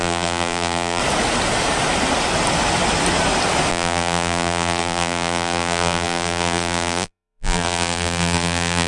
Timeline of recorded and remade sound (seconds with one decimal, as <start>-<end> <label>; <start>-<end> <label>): 0.0-1.0 remade; 1.0-3.7 recorded; 3.7-8.9 remade